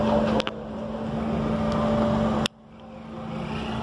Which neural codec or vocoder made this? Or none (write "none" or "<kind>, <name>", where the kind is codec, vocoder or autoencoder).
none